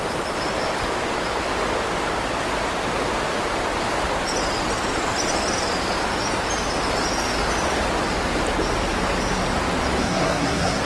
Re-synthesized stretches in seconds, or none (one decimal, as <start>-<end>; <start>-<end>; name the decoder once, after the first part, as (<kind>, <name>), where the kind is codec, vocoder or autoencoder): 10.0-10.9 (codec, SNAC)